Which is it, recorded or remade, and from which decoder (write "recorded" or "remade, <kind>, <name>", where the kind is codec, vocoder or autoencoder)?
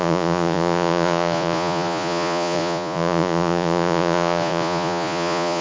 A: remade, vocoder, Vocos